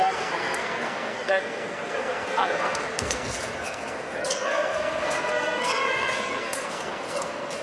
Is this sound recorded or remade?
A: remade